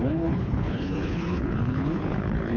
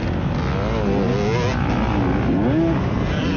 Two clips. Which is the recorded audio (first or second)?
second